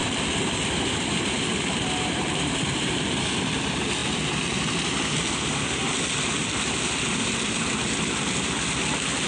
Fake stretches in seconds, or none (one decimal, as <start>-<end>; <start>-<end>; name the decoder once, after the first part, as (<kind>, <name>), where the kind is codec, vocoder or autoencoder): none